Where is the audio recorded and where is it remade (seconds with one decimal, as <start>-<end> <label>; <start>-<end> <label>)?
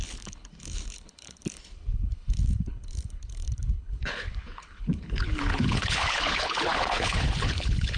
0.0-8.0 remade